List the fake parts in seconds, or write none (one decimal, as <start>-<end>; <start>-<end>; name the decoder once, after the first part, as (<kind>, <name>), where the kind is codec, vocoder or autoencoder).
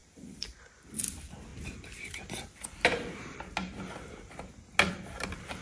0.0-1.5 (vocoder, BigVGAN v2); 4.9-5.6